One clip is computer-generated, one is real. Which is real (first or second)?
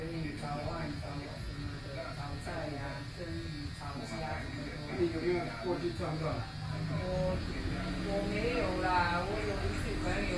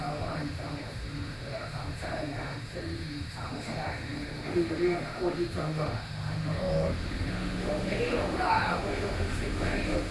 first